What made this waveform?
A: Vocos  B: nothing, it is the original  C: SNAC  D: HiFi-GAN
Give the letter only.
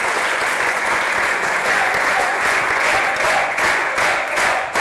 A